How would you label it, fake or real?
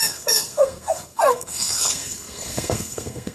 fake